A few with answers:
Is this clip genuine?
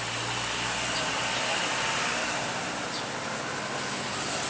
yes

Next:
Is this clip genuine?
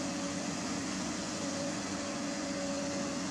no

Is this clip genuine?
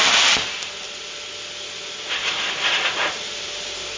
yes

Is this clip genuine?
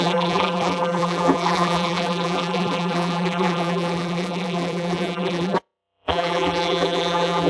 no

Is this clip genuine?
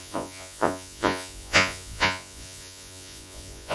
no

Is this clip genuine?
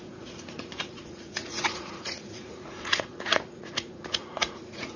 no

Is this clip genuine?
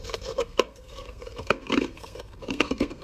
no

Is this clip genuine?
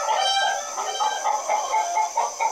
yes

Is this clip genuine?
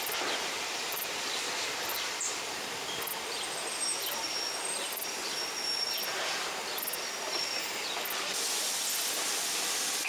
no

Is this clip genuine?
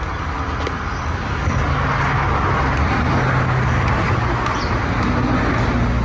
yes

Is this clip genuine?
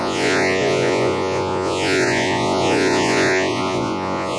no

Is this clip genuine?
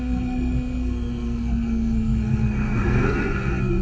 no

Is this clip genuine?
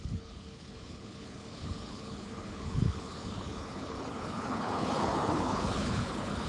no